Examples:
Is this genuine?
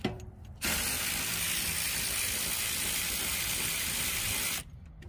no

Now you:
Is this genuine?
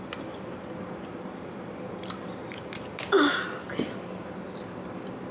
no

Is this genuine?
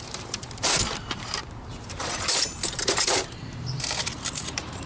no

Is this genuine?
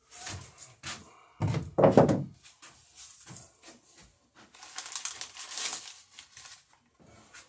yes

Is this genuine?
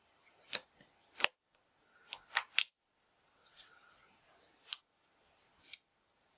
yes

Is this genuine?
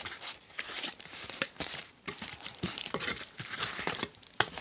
no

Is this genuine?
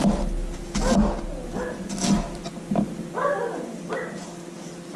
yes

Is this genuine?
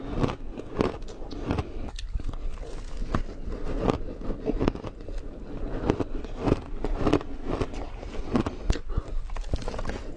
yes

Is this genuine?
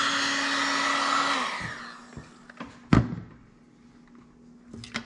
yes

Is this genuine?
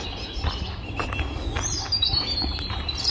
yes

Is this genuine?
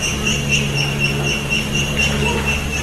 yes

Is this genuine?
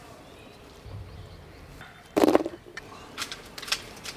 no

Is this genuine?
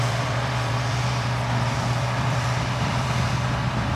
no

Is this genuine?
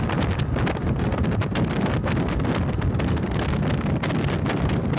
yes